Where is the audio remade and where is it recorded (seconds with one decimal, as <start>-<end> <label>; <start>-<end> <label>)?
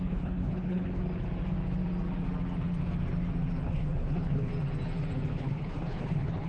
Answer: 0.0-1.0 remade; 1.0-3.6 recorded; 3.6-4.5 remade; 4.5-5.3 recorded; 5.3-6.5 remade